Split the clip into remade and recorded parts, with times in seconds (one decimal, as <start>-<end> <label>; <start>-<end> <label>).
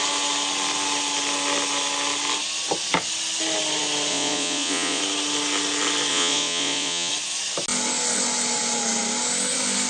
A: 0.0-4.1 recorded; 4.1-5.0 remade; 5.0-6.1 recorded; 6.1-7.1 remade; 7.1-9.9 recorded